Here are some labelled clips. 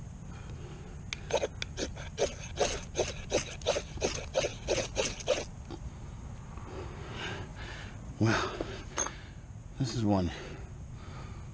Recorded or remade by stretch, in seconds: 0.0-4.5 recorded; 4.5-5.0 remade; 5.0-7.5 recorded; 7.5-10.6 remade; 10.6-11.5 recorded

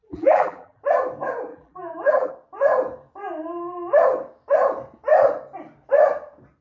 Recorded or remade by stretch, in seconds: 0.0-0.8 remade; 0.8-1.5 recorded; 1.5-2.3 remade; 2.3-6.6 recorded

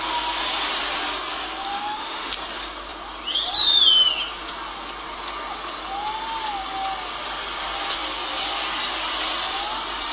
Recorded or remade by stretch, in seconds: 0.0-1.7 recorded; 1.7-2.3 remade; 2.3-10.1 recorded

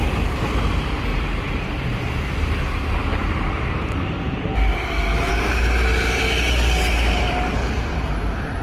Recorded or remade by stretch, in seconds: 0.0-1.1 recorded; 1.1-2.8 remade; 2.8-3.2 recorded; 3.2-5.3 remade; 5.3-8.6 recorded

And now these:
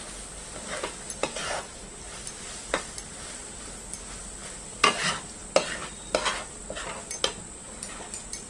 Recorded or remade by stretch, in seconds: 0.0-1.2 recorded; 1.2-3.0 remade; 3.0-8.5 recorded

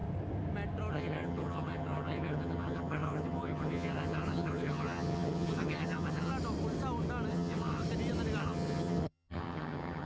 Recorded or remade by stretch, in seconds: 0.0-0.9 recorded; 0.9-6.3 remade; 6.3-7.3 recorded; 7.3-7.8 remade; 7.8-8.4 recorded; 8.4-10.1 remade